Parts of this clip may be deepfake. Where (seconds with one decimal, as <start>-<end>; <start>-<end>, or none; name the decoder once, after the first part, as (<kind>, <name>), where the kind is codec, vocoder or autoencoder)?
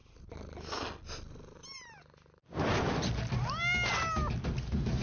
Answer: none